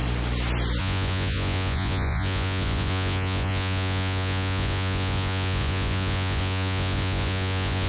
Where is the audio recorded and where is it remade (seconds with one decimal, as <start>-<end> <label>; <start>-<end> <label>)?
0.0-0.8 recorded; 0.8-7.9 remade